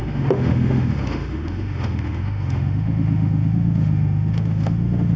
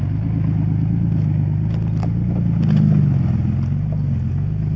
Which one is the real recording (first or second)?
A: second